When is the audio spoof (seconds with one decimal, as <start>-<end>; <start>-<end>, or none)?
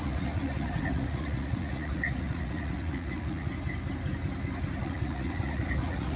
0.0-3.5; 4.8-6.2